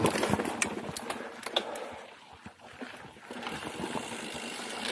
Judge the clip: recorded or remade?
recorded